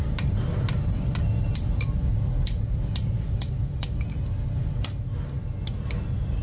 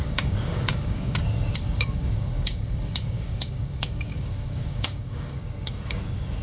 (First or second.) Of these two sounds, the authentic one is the first